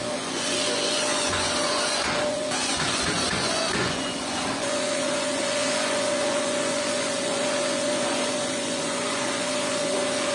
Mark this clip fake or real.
fake